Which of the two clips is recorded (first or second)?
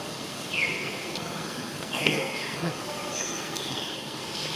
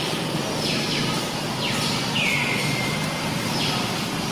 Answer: second